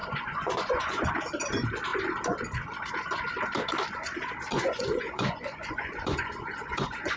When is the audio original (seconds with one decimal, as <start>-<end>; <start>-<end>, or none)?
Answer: 1.1-4.5